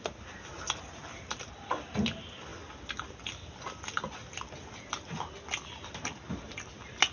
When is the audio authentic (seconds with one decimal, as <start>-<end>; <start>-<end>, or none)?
0.0-7.1